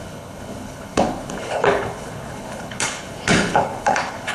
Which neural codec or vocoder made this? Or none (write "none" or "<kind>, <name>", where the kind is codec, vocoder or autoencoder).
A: codec, HILCodec